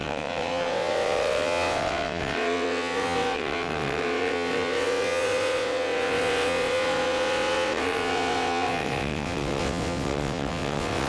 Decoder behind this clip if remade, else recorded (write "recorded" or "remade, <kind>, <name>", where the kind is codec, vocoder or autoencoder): remade, vocoder, WaveNeXt